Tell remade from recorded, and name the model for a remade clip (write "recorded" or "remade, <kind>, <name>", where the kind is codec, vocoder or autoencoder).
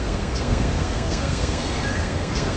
remade, codec, SNAC